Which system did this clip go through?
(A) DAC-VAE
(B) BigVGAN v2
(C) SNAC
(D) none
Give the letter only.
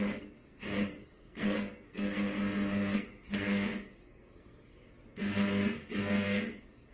C